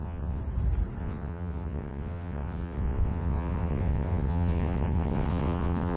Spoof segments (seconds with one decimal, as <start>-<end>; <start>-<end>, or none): 0.0-0.4; 1.0-6.0